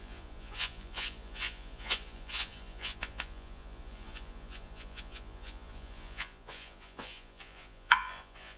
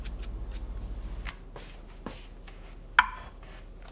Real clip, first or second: second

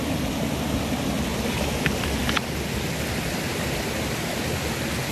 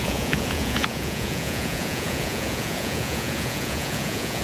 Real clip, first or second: first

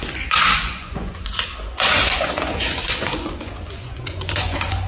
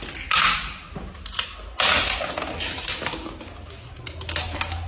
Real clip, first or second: second